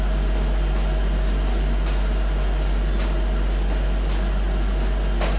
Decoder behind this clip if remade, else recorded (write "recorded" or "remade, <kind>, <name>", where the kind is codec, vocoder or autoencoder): recorded